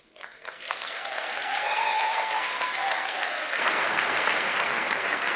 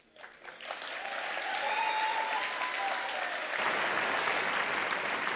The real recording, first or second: second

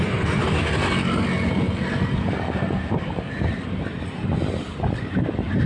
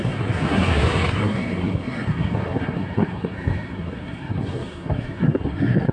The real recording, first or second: first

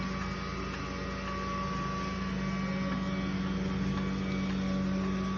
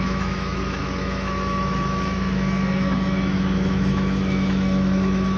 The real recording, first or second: first